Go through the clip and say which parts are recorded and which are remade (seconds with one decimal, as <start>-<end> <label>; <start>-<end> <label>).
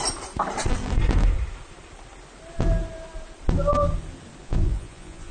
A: 0.0-4.4 recorded; 4.4-5.3 remade